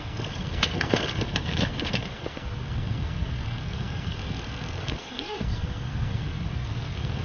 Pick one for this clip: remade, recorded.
remade